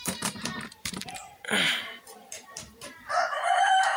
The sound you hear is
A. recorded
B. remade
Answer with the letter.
B